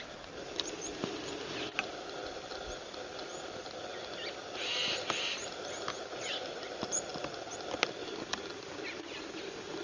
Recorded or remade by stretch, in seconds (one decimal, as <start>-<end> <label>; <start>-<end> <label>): 0.0-9.8 recorded